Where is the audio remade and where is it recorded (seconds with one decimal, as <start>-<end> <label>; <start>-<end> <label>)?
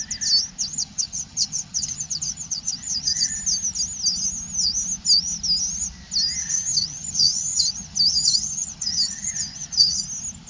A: 0.0-0.7 recorded; 0.7-3.3 remade; 3.3-6.4 recorded; 6.4-10.0 remade; 10.0-10.5 recorded